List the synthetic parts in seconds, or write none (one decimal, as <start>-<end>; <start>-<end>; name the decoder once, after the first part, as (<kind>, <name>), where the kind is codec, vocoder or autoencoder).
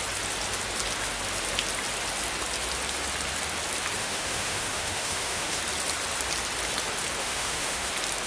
4.0-5.6 (autoencoder, DAC-VAE); 7.2-7.9